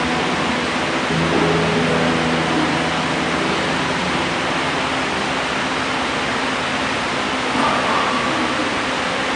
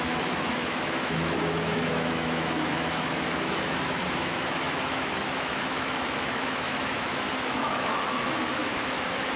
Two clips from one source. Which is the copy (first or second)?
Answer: second